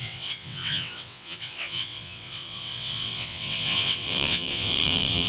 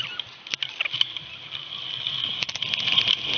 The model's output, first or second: first